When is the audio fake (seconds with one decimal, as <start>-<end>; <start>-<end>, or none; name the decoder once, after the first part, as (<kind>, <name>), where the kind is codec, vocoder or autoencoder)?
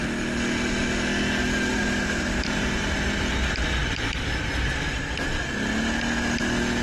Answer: 1.7-3.1 (vocoder, BigVGAN v2)